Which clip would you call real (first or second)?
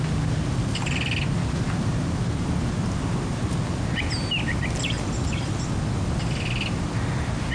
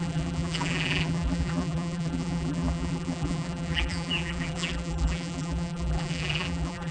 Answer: first